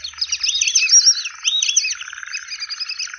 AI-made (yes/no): no